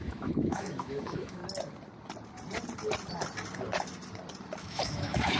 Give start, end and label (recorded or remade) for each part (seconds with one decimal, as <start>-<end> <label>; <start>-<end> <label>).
0.0-1.4 remade; 1.4-4.6 recorded; 4.6-5.4 remade